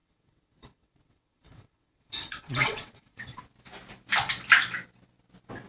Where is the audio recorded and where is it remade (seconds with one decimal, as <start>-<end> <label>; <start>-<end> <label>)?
0.0-3.4 remade; 3.4-5.7 recorded